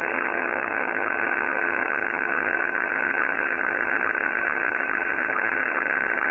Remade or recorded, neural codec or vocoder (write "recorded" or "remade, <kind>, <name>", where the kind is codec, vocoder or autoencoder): remade, vocoder, HiFi-GAN